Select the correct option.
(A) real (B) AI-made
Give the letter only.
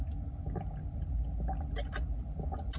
A